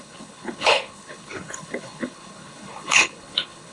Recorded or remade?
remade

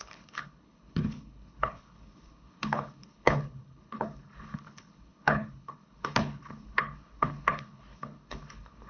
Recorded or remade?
remade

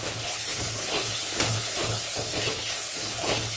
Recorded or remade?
remade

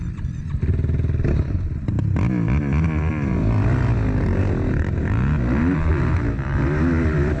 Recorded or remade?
recorded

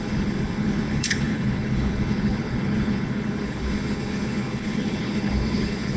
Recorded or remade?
remade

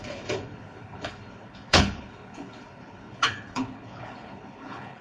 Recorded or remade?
remade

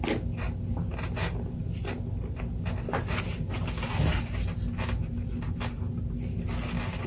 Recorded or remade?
recorded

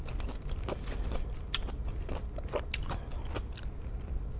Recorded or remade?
recorded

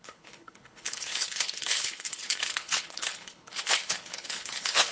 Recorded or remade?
remade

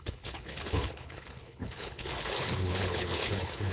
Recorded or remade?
remade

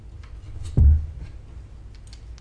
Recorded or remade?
recorded